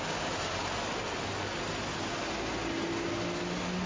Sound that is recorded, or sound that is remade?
recorded